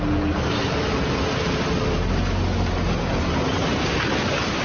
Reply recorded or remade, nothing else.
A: recorded